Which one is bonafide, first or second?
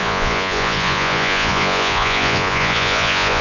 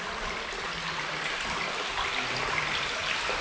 second